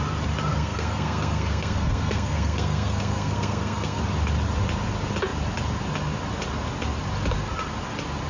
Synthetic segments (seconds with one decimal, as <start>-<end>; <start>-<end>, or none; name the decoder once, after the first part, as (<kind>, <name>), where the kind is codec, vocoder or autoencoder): 0.5-4.0 (codec, SNAC)